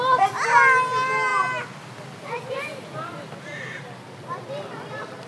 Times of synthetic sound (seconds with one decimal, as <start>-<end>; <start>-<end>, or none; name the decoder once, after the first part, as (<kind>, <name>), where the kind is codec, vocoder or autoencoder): none

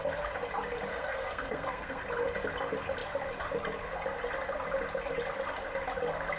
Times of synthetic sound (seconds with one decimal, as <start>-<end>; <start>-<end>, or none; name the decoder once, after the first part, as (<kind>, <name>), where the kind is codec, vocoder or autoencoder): 0.9-2.0 (codec, SNAC)

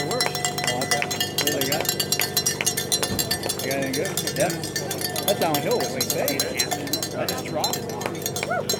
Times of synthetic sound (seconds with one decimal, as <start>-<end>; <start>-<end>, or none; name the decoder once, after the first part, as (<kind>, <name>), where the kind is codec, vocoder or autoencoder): none

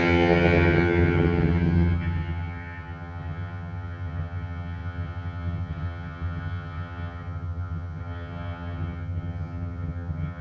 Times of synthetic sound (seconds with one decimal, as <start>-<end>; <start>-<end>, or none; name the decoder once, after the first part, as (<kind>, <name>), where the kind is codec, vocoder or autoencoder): 0.0-10.4 (vocoder, HiFi-GAN)

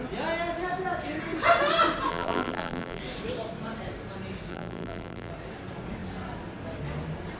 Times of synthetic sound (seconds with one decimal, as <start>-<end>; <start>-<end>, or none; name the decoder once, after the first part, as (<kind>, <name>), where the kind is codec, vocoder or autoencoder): 2.1-3.0 (vocoder, BigVGAN v2); 4.5-5.3

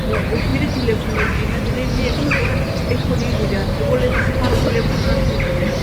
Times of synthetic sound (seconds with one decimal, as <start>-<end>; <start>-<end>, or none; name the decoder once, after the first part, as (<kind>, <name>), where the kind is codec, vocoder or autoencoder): none

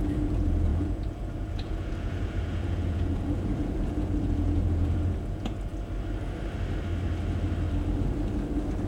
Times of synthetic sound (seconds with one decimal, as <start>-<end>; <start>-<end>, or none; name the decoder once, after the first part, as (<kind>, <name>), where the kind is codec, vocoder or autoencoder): 0.0-5.7 (vocoder, Vocos)

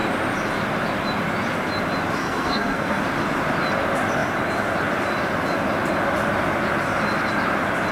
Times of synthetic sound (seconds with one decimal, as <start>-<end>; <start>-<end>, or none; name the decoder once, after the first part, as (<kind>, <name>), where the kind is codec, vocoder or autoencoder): 2.2-3.0 (codec, SNAC)